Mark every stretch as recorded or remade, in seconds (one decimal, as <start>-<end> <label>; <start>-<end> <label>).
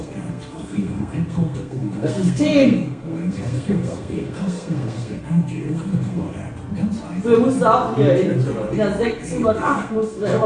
0.0-6.4 remade; 6.4-9.0 recorded; 9.0-10.5 remade